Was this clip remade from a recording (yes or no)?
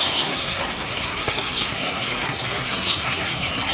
yes